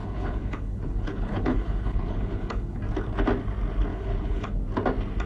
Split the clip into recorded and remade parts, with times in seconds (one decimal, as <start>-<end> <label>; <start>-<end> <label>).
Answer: 0.0-2.8 remade; 2.8-3.9 recorded; 3.9-4.6 remade; 4.6-5.3 recorded